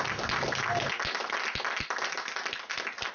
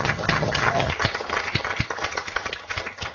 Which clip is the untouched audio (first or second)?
first